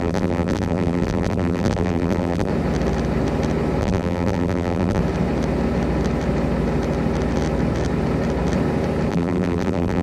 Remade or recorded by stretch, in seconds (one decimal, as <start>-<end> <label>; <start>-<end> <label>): 0.0-2.5 remade; 2.5-3.8 recorded; 3.8-5.0 remade; 5.0-9.1 recorded; 9.1-10.0 remade